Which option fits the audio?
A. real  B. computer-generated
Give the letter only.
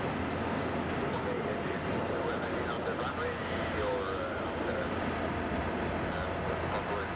A